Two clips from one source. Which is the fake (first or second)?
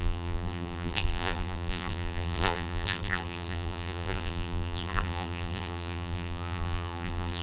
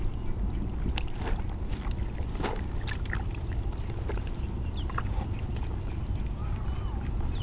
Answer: first